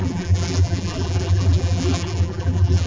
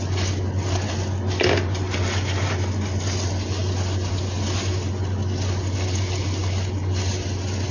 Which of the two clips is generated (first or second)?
first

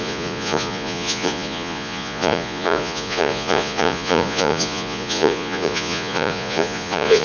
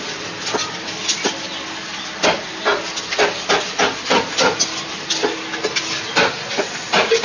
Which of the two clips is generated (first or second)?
first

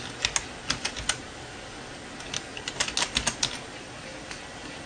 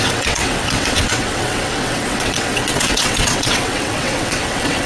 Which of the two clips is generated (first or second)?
second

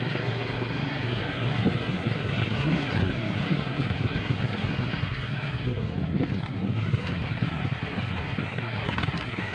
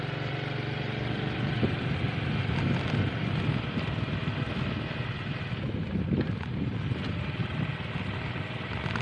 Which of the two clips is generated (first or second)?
first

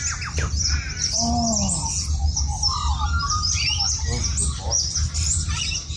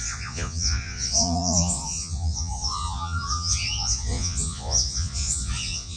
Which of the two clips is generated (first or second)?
second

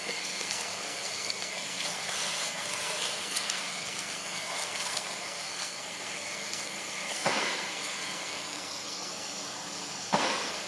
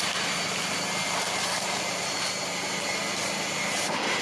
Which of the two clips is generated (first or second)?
first